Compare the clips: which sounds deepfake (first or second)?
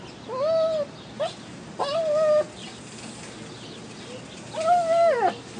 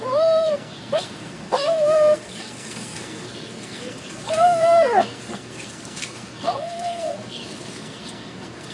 second